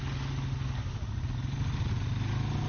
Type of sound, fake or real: real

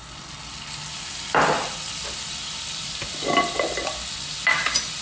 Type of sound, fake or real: real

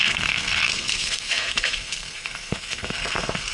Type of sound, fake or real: fake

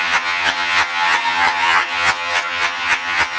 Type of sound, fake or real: fake